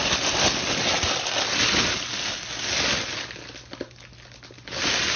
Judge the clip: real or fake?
real